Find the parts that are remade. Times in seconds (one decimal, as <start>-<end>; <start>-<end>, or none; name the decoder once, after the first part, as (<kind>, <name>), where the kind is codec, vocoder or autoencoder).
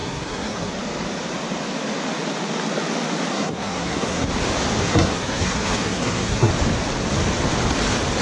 0.0-0.7 (codec, SNAC); 3.3-4.3; 4.8-6.5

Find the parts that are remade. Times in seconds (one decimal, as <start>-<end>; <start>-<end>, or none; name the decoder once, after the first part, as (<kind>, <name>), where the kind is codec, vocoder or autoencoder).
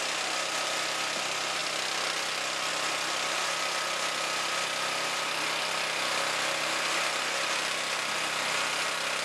none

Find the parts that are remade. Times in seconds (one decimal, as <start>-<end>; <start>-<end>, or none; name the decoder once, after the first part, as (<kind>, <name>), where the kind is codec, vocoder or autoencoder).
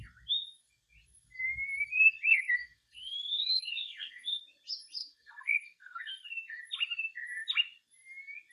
2.3-4.4 (codec, SNAC); 5.0-6.6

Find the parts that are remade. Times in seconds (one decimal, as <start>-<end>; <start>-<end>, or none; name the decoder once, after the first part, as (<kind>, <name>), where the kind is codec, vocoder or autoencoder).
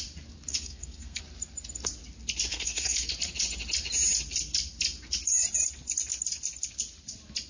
0.5-1.2 (codec, SNAC); 2.5-3.1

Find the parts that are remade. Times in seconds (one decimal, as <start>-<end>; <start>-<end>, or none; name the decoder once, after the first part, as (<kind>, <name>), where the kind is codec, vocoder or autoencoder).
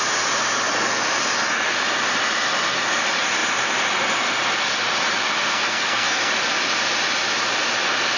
5.5-6.3 (codec, SNAC)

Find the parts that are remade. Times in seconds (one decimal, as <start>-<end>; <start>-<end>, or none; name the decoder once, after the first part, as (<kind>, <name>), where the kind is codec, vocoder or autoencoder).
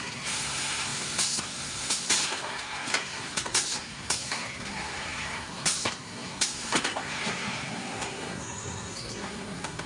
0.0-9.9 (codec, SNAC)